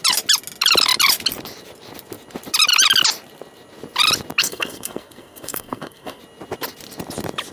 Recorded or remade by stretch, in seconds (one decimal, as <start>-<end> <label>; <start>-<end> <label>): 0.0-4.4 recorded; 4.4-6.2 remade; 6.2-7.5 recorded